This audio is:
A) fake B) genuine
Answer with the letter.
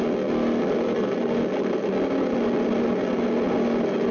B